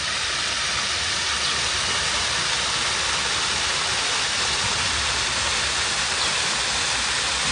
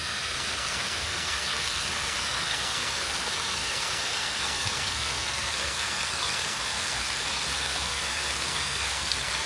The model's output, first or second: second